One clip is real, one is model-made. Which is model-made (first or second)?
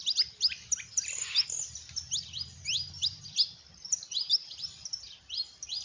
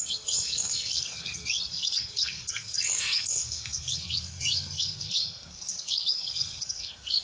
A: second